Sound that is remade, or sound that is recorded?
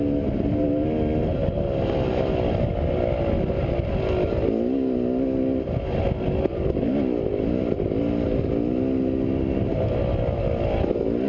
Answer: recorded